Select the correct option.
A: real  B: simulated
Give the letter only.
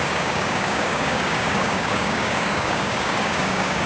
B